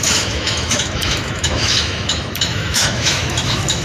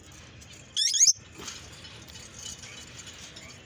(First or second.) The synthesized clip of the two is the first